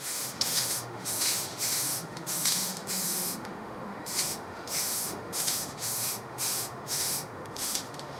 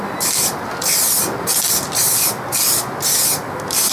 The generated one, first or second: first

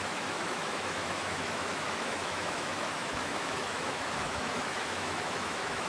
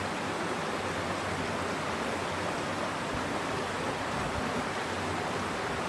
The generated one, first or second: first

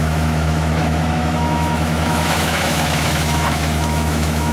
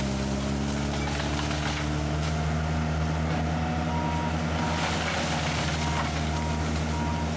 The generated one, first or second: first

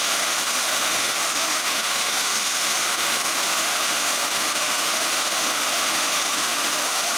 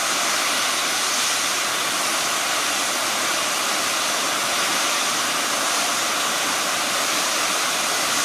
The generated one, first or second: first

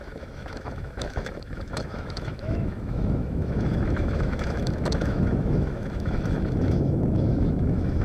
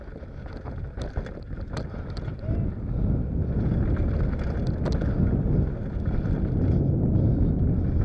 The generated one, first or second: first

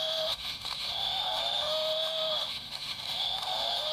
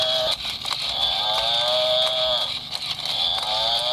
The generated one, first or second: first